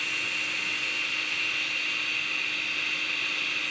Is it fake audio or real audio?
real